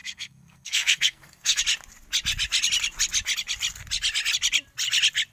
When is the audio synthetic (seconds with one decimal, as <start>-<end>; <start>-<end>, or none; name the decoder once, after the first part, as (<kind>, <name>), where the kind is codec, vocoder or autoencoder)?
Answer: 0.0-1.6 (codec, SNAC)